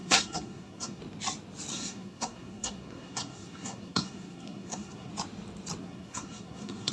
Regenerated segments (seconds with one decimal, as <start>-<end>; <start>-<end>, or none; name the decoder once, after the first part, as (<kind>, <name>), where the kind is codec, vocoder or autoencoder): 0.0-1.0 (codec, SNAC); 1.7-5.1; 5.8-6.9